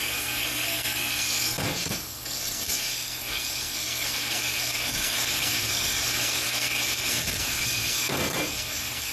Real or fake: fake